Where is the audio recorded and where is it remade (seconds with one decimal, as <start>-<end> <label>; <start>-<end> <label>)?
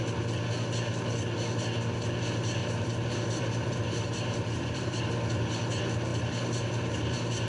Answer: 0.0-2.6 recorded; 2.6-5.0 remade; 5.0-6.1 recorded; 6.1-7.5 remade